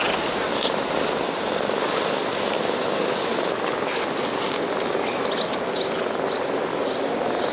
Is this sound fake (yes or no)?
no